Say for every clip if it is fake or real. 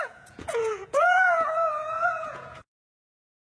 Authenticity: fake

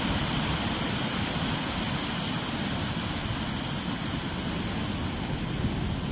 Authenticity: real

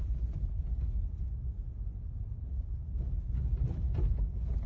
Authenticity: real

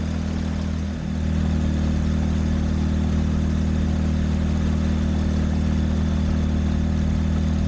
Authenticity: real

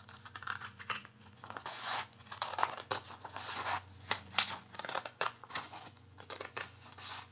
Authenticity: fake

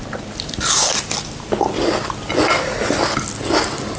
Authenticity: real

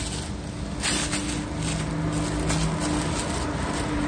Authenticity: real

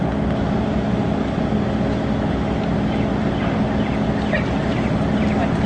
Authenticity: real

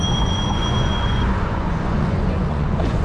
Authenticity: fake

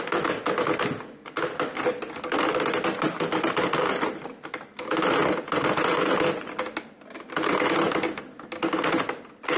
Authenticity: real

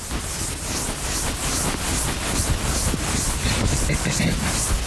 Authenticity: real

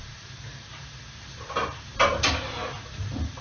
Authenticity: real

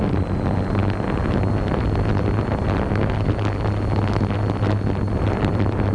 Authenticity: real